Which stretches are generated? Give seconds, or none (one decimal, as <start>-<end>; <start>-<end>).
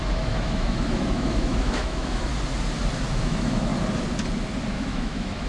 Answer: 0.0-2.3; 3.1-3.7; 4.7-5.5